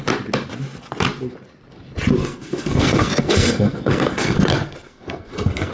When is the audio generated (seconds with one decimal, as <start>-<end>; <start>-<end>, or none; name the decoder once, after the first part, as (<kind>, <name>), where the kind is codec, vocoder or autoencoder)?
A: 2.2-5.7 (codec, SNAC)